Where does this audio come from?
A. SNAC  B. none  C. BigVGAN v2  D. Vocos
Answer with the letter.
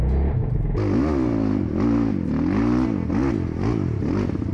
B